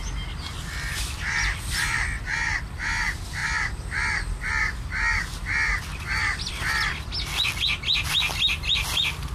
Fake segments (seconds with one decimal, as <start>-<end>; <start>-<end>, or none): none